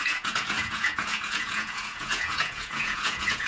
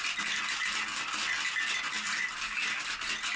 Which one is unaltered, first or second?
second